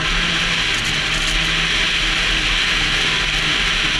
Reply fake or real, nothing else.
real